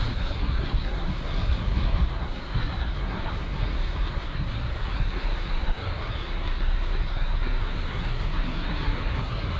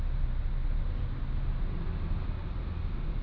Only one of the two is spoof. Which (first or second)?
first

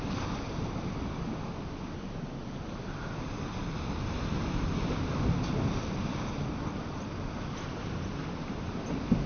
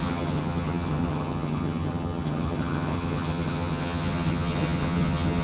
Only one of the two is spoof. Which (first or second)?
second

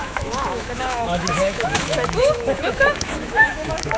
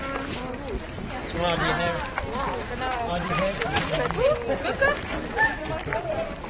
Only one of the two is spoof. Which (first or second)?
first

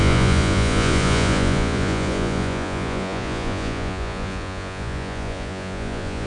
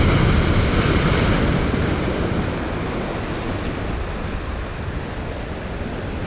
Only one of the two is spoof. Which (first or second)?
first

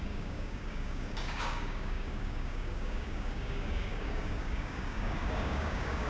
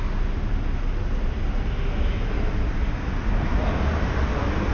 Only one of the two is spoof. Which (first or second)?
first